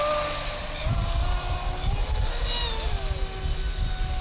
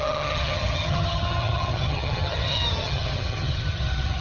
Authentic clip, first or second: first